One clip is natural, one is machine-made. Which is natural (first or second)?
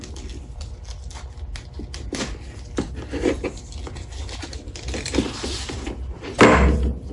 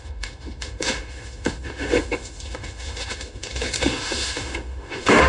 first